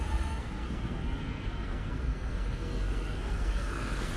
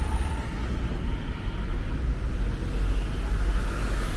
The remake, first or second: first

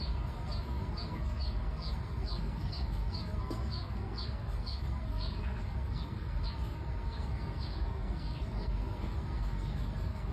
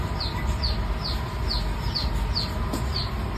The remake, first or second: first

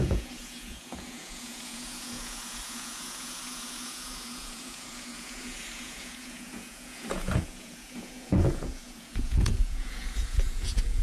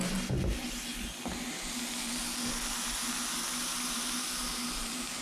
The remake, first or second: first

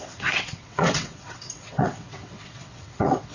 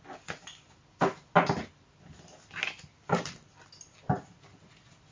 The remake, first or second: first